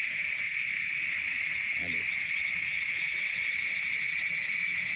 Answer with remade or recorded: remade